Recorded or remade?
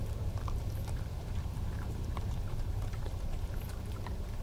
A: remade